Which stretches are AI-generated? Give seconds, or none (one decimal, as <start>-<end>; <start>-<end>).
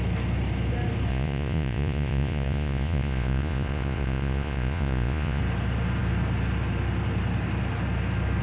1.1-5.4